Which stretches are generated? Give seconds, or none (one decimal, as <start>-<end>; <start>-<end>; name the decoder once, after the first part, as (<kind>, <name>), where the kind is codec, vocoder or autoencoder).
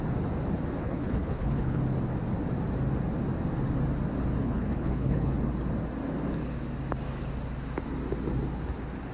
0.8-1.8 (codec, HILCodec); 4.4-5.4